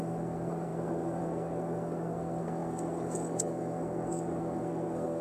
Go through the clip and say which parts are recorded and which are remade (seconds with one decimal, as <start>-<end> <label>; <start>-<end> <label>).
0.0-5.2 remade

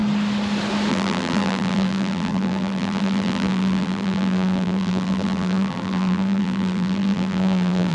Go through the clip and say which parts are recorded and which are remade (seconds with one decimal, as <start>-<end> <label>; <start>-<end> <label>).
0.0-0.9 recorded; 0.9-7.9 remade

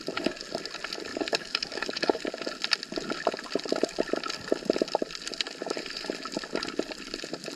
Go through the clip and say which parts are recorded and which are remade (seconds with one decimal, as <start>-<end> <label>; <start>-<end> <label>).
0.0-1.1 recorded; 1.1-2.2 remade; 2.2-7.6 recorded

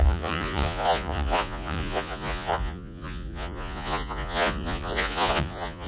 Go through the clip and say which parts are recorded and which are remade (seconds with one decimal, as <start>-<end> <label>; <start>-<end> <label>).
0.0-5.9 remade

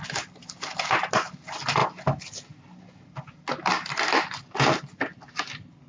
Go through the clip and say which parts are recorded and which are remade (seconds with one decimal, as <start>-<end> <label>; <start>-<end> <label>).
0.0-5.9 recorded

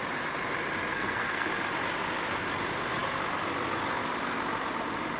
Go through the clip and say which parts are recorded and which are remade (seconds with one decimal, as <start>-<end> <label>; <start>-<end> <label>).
0.0-0.9 recorded; 0.9-1.5 remade; 1.5-5.2 recorded